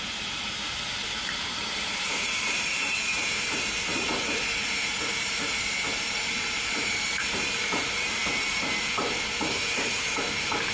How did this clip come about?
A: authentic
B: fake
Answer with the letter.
B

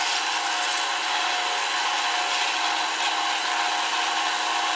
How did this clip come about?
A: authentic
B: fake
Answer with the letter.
A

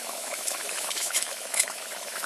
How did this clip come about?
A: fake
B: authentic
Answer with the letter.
A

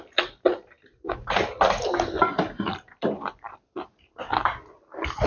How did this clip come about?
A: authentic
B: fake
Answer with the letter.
A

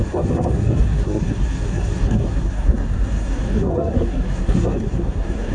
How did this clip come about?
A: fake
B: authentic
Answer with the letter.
A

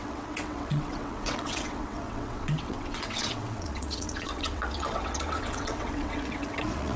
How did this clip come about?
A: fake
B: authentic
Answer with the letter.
A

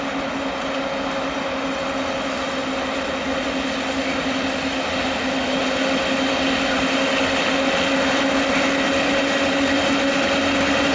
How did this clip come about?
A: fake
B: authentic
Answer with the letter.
B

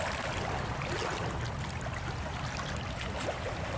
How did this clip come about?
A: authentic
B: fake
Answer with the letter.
A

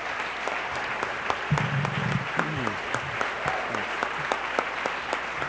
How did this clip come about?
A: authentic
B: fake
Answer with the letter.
A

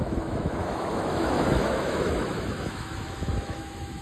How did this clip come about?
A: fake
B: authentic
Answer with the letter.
A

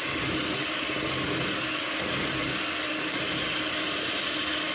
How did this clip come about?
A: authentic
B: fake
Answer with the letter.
A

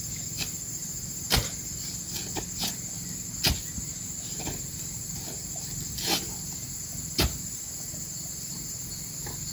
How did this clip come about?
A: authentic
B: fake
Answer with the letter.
A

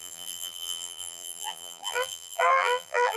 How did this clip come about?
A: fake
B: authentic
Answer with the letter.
A